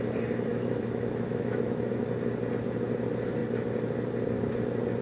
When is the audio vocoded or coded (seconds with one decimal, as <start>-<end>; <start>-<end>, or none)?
0.5-2.0